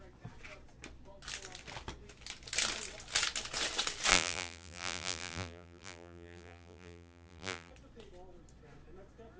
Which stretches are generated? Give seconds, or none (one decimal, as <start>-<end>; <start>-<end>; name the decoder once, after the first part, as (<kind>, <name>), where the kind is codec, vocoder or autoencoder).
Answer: 4.1-7.7 (vocoder, BigVGAN v2)